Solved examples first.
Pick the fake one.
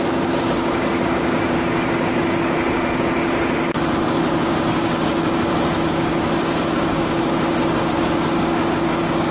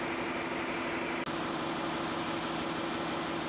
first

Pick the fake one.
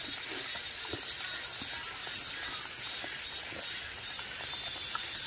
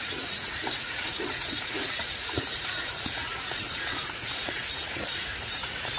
second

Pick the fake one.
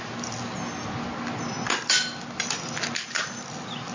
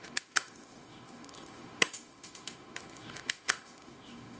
second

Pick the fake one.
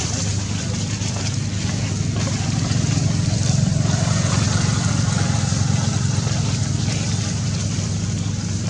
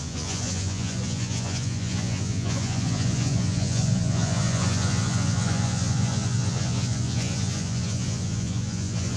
second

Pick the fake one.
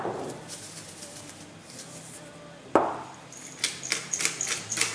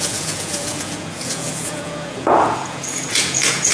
second